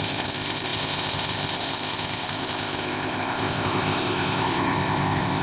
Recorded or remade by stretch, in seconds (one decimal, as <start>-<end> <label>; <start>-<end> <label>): 0.0-5.4 remade